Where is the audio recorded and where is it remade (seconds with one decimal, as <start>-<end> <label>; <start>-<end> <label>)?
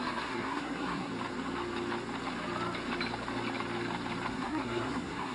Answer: 0.0-1.1 remade; 1.1-4.3 recorded; 4.3-5.3 remade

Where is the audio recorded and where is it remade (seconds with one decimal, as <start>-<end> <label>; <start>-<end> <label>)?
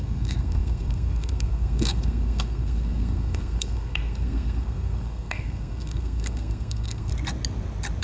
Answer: 0.0-7.1 remade; 7.1-8.0 recorded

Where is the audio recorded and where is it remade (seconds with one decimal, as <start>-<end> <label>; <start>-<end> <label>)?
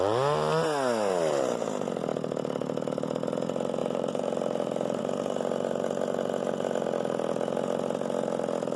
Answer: 0.0-3.8 recorded; 3.8-5.0 remade; 5.0-8.8 recorded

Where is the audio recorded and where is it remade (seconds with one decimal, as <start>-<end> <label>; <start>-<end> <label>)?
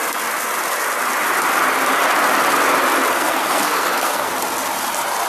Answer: 0.0-3.1 recorded; 3.1-4.3 remade; 4.3-5.3 recorded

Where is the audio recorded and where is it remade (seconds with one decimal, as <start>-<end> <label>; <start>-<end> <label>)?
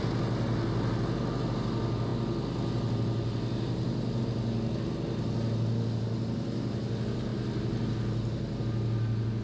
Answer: 0.0-9.4 recorded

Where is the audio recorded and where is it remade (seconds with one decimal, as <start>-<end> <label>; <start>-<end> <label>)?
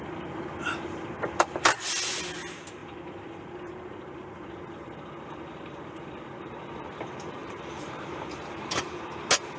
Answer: 0.0-7.4 recorded; 7.4-9.0 remade; 9.0-9.6 recorded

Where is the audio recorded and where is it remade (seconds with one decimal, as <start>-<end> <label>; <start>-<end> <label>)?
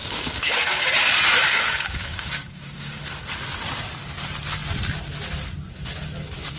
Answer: 0.0-0.9 remade; 0.9-1.4 recorded; 1.4-3.0 remade; 3.0-6.6 recorded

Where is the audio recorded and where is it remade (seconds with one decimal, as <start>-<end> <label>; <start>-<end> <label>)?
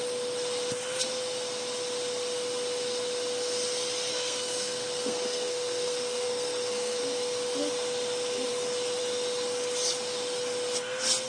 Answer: 0.0-4.1 recorded; 4.1-7.0 remade; 7.0-11.3 recorded